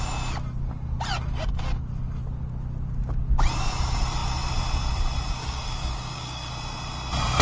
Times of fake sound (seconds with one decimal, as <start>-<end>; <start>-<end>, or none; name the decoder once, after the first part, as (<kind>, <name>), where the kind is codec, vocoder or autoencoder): 5.4-6.5 (codec, DAC)